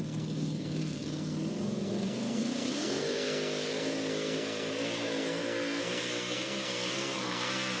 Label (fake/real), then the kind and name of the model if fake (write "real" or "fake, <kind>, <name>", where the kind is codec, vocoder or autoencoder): fake, codec, SNAC